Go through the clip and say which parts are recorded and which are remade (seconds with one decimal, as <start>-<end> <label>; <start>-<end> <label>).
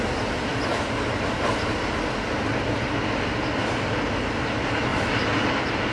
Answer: 0.0-5.9 recorded